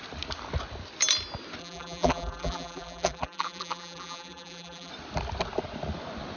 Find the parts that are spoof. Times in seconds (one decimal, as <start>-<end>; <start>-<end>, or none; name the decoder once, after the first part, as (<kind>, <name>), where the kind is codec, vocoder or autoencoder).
1.6-4.9 (vocoder, BigVGAN v2)